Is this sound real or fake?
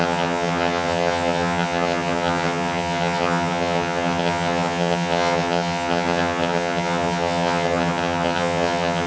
fake